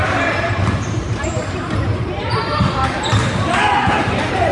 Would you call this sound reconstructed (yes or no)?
yes